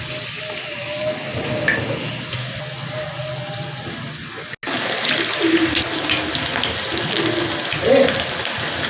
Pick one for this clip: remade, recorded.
recorded